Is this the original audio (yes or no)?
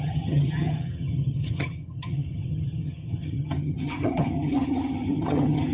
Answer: no